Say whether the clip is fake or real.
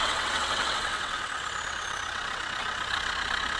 fake